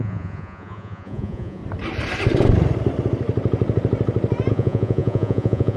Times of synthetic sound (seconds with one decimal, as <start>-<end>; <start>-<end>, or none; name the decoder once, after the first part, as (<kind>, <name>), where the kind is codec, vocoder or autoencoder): 0.0-1.6 (vocoder, Vocos); 4.5-5.8